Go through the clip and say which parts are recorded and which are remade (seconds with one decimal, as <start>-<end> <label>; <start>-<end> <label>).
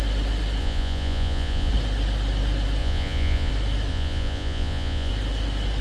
0.0-0.6 recorded; 0.6-1.7 remade; 1.7-2.8 recorded; 2.8-3.5 remade; 3.5-3.9 recorded; 3.9-5.1 remade; 5.1-5.8 recorded